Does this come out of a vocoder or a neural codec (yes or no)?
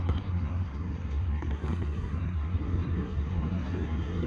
yes